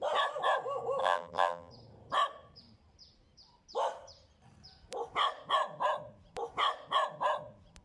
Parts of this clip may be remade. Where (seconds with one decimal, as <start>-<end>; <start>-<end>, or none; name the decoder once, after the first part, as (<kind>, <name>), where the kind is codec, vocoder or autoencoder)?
1.0-1.7 (vocoder, BigVGAN v2)